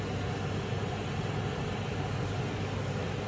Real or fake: real